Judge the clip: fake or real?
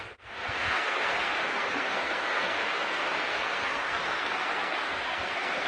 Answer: fake